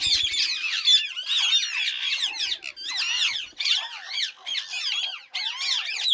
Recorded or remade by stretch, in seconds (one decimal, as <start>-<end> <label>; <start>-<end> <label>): 0.0-6.1 recorded